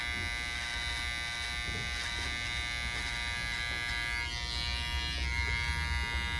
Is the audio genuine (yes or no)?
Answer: yes